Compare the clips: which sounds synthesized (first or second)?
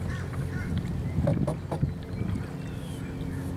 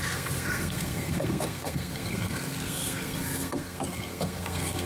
second